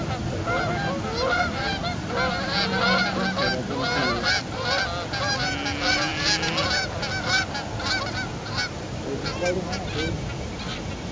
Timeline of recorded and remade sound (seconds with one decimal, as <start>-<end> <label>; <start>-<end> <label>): 0.0-11.1 recorded